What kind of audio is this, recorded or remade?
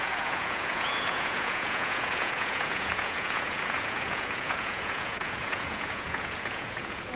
remade